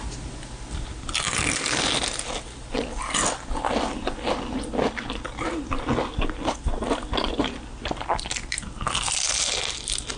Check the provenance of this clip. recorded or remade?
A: recorded